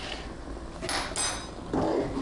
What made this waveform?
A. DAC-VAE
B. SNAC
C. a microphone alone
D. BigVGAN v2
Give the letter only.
C